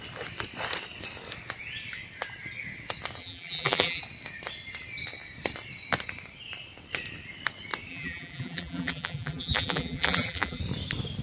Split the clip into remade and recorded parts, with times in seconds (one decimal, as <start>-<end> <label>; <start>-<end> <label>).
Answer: 0.0-3.2 recorded; 3.2-4.0 remade; 4.0-7.9 recorded; 7.9-10.6 remade; 10.6-11.2 recorded